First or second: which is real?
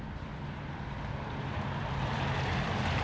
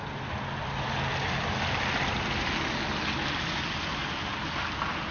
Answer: second